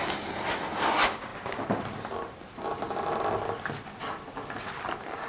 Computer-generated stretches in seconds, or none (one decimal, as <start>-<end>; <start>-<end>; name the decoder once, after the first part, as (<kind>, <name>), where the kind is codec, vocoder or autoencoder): none